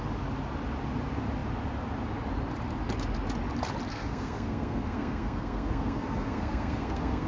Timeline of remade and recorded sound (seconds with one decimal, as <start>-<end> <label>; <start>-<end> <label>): 0.0-3.9 recorded; 3.9-7.3 remade